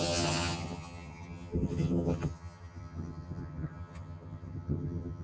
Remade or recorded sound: remade